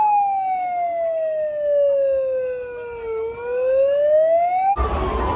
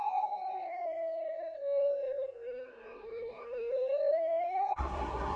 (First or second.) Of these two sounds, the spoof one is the second